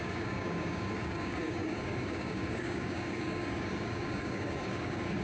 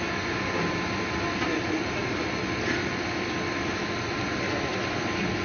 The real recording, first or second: second